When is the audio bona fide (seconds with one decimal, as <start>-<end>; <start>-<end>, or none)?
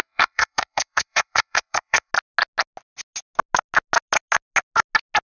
2.1-5.3